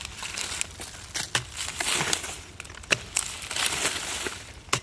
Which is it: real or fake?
real